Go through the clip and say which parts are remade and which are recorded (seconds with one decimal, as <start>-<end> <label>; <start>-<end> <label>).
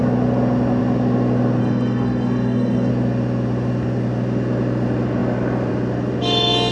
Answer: 0.0-1.6 recorded; 1.6-2.9 remade; 2.9-6.7 recorded